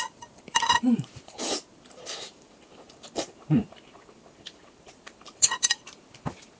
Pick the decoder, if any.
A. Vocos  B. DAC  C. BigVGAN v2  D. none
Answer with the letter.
C